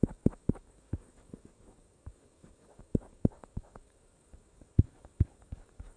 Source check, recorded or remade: remade